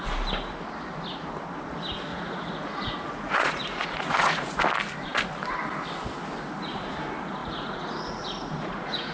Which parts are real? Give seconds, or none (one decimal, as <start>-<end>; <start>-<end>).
0.0-2.1; 4.6-7.4